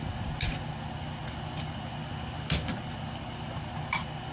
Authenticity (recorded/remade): recorded